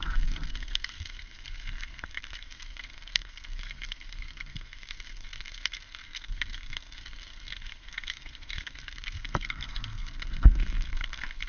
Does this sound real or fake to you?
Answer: fake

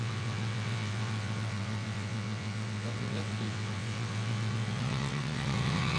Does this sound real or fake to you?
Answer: fake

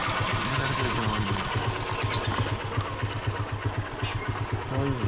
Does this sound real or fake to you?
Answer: real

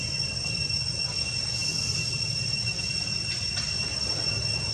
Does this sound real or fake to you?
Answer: real